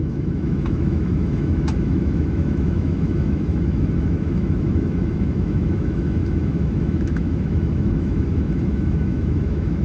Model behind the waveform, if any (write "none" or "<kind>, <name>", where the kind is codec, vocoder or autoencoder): autoencoder, DAC-VAE